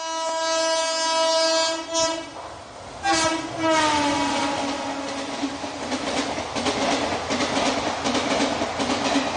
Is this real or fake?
real